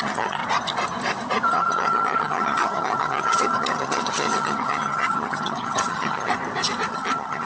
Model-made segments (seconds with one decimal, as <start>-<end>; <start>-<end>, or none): 0.0-0.4; 1.5-6.3; 6.9-7.5